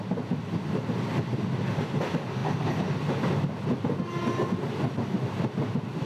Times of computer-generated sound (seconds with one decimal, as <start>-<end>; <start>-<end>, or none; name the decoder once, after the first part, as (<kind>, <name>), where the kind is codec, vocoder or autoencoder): none